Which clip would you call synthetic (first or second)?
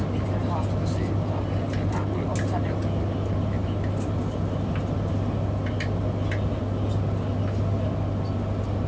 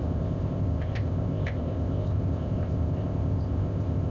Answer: second